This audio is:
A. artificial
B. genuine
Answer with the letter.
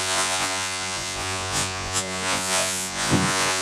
A